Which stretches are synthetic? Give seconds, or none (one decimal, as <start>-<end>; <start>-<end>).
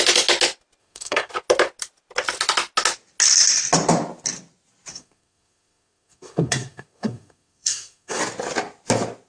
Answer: 0.8-1.3; 4.9-8.2